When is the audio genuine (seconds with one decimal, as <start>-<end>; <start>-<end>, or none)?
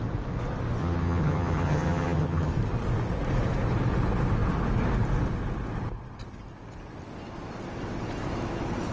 0.0-0.8; 2.5-8.9